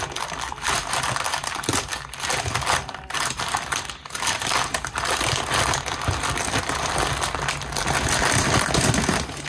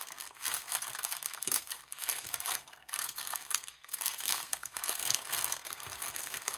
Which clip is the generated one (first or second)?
second